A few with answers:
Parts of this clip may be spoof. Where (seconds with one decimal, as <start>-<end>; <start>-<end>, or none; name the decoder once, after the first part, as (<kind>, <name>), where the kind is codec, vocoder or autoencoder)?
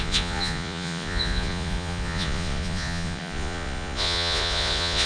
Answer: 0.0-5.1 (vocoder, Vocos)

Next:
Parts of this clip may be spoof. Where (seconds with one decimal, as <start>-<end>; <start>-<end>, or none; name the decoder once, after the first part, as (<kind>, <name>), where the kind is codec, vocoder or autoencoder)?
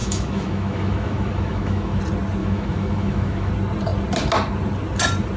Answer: 0.0-2.0 (autoencoder, DAC-VAE); 2.4-3.5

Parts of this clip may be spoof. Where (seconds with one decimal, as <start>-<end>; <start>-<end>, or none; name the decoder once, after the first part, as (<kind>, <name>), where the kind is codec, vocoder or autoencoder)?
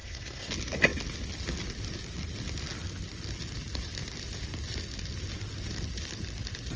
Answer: 0.0-0.5 (codec, SNAC)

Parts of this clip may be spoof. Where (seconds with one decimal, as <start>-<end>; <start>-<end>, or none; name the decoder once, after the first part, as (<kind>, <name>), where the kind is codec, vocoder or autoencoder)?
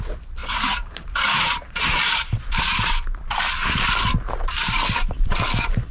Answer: 0.4-3.4 (vocoder, BigVGAN v2)